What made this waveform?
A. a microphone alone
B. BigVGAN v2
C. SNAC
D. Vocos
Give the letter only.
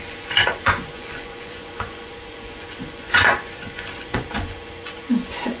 D